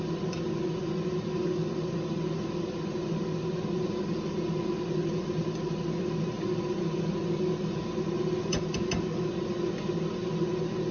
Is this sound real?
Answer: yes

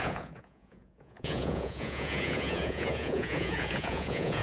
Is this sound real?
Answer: no